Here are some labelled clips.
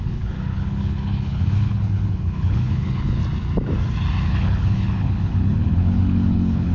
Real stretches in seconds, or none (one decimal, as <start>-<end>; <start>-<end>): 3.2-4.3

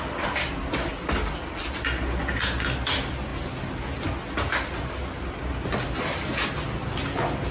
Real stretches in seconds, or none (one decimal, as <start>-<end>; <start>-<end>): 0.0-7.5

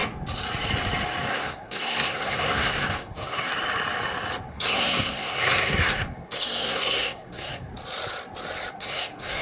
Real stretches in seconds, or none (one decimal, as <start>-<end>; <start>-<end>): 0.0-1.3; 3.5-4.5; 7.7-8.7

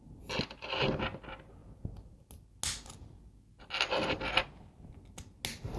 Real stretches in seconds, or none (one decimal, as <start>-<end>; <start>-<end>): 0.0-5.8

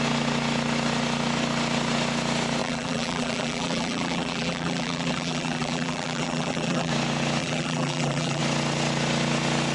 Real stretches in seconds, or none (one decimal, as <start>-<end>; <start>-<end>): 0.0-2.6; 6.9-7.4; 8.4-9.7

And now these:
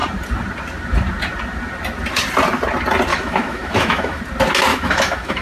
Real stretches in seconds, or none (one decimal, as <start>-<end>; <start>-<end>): 0.0-3.1; 4.2-4.7